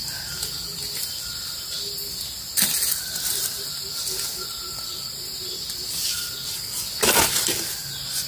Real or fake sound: real